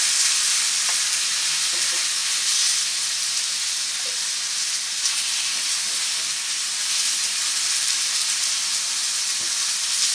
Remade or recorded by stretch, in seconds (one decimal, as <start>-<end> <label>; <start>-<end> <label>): 0.0-10.1 recorded